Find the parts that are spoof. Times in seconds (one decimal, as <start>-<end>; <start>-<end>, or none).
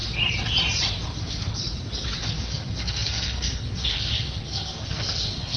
1.2-1.6; 2.2-5.6